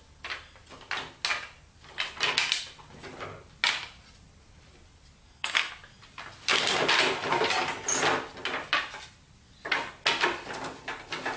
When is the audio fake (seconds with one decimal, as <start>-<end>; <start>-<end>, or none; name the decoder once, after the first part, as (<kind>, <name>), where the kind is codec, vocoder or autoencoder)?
5.2-5.7 (codec, SNAC)